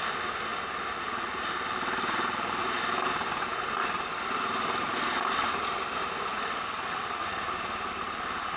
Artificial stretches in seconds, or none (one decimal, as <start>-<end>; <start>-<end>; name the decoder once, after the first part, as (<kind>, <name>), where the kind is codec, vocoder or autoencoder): none